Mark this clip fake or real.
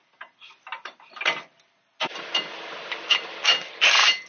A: real